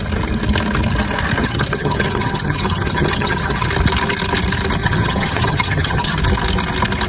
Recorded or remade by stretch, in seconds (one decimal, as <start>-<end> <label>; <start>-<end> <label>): 0.0-1.4 recorded; 1.4-3.7 remade; 3.7-4.8 recorded; 4.8-6.2 remade; 6.2-7.1 recorded

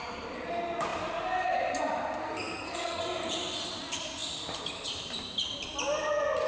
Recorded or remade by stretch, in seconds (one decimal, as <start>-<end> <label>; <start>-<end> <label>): 0.0-2.2 recorded; 2.2-3.0 remade; 3.0-6.5 recorded

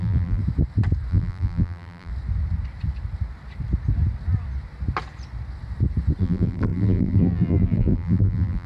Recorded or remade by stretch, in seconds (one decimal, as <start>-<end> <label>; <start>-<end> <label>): 0.0-0.4 remade; 0.4-1.1 recorded; 1.1-2.1 remade; 2.1-6.2 recorded; 6.2-8.7 remade